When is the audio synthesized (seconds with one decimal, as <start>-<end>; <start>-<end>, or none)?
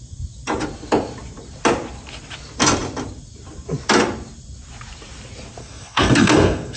5.6-6.8